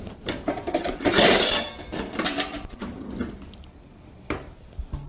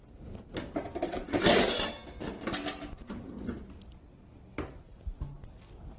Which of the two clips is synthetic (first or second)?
first